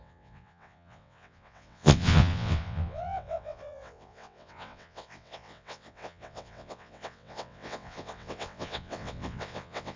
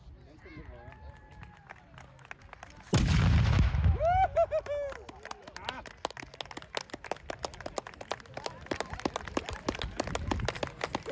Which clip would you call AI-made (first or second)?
first